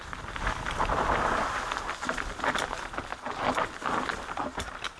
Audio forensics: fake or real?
real